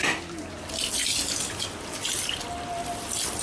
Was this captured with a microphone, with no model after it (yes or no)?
yes